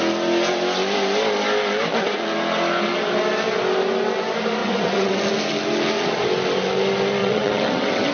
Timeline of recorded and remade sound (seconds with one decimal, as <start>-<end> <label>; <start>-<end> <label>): 0.0-4.6 recorded; 4.6-5.2 remade; 5.2-7.2 recorded; 7.2-8.1 remade